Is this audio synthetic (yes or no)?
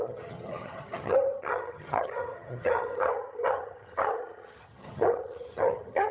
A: yes